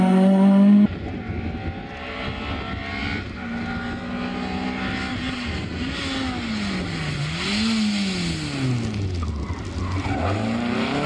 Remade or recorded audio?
recorded